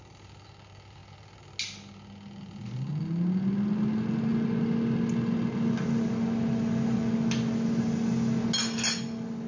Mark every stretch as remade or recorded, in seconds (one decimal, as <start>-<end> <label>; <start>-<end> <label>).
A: 0.0-9.5 recorded